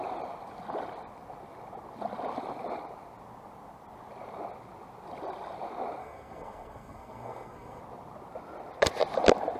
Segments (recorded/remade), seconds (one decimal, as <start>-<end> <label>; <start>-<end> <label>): 0.0-6.0 recorded; 6.0-7.8 remade; 7.8-9.6 recorded